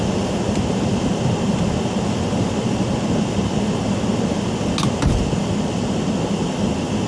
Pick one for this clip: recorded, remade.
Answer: recorded